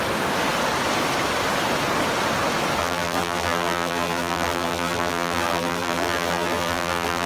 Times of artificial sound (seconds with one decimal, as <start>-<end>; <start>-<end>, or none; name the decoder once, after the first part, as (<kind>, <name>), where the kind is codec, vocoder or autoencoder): 2.8-7.3 (vocoder, BigVGAN v2)